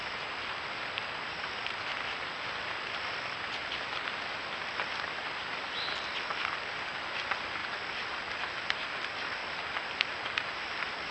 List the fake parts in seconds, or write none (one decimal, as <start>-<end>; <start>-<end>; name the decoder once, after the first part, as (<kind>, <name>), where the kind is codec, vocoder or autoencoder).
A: none

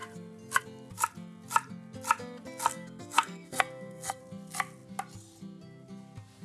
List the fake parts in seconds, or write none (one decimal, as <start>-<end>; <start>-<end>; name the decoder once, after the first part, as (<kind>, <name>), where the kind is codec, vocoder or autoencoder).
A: 2.7-4.2 (codec, SNAC)